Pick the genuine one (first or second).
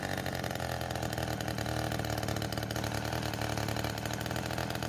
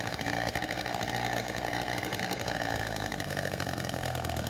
first